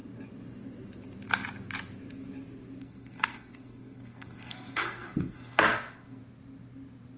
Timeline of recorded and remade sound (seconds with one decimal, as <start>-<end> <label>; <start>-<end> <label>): 0.0-2.8 recorded; 2.8-6.2 remade; 6.2-7.2 recorded